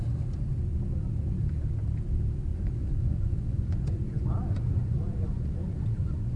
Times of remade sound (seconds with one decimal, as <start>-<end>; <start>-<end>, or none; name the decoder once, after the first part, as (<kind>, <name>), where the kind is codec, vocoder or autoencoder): 2.5-6.4 (vocoder, Vocos)